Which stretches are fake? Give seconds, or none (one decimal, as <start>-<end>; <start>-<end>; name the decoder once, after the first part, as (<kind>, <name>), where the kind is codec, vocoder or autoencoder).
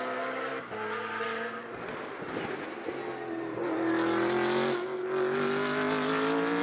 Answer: none